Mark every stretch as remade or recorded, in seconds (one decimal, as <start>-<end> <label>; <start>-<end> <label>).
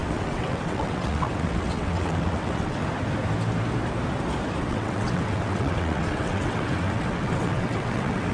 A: 0.0-2.8 remade; 2.8-4.6 recorded; 4.6-8.3 remade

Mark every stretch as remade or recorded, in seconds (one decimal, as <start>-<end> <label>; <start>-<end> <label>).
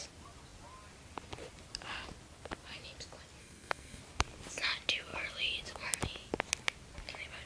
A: 0.0-3.4 recorded; 3.4-4.0 remade; 4.0-7.5 recorded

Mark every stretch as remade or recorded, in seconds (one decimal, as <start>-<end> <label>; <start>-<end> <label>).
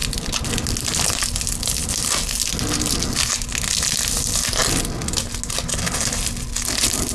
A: 0.0-7.1 recorded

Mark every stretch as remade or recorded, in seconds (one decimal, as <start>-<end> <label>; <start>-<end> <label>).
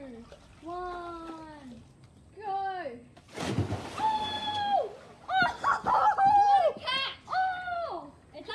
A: 0.0-8.5 recorded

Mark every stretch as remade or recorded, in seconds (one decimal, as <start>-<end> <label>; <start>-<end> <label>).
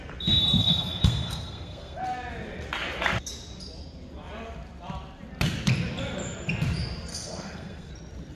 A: 0.0-0.6 recorded; 0.6-2.0 remade; 2.0-7.1 recorded; 7.1-7.9 remade; 7.9-8.4 recorded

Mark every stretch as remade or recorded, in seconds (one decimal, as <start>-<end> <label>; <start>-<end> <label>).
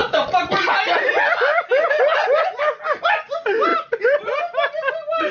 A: 0.0-3.7 recorded; 3.7-4.4 remade; 4.4-5.3 recorded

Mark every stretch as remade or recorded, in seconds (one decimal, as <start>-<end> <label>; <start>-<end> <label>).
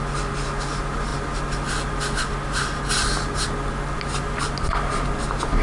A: 0.0-5.6 recorded